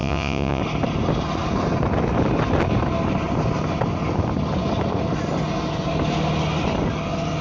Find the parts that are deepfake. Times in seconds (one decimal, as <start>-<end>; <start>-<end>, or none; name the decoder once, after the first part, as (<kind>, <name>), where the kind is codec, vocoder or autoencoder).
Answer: 0.0-0.6 (vocoder, Vocos)